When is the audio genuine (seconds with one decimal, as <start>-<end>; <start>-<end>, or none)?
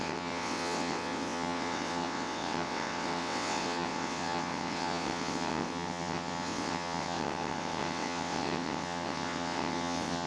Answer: none